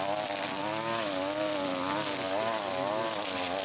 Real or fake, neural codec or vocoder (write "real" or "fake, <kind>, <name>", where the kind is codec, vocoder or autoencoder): real